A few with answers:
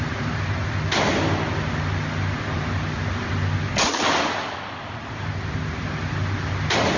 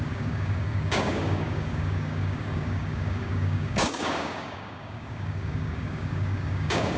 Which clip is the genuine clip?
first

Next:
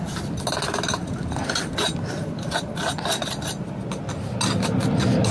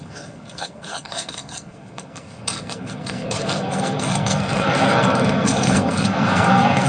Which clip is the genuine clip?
first